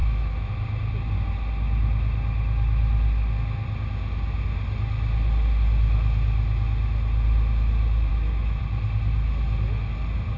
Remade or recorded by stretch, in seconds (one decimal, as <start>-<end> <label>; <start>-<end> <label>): 0.0-0.5 remade; 0.5-8.1 recorded; 8.1-8.6 remade; 8.6-10.4 recorded